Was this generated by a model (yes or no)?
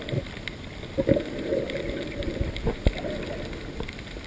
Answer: yes